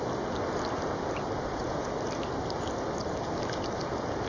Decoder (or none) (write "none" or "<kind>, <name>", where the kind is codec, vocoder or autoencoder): none